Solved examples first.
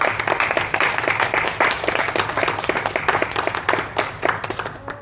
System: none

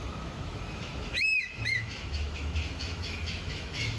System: autoencoder, DAC-VAE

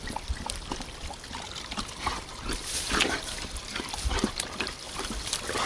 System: none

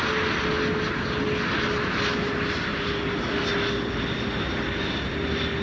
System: none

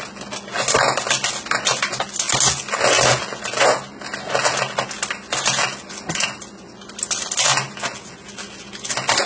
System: none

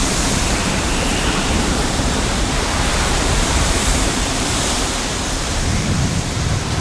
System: vocoder, BigVGAN v2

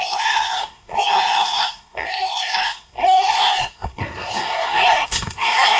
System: codec, SNAC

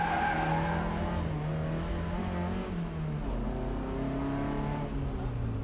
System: none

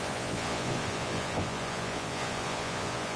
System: vocoder, Vocos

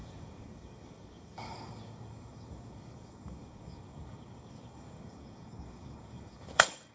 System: codec, DAC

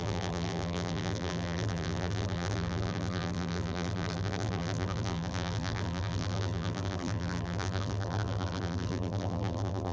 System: vocoder, BigVGAN v2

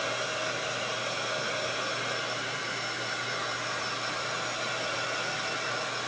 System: none